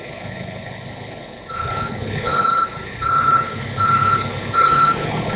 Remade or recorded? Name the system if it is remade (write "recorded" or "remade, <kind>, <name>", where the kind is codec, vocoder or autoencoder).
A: remade, codec, HILCodec